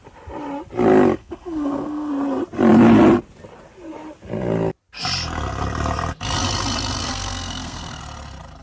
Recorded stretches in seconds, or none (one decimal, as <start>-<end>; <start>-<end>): 0.0-1.2; 2.1-7.0; 8.0-8.6